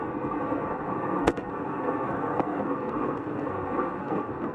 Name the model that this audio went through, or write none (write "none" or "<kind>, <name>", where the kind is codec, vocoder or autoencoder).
codec, SNAC